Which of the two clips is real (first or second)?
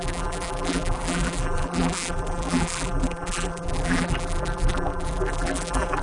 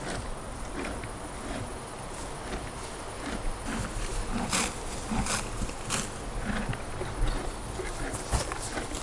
second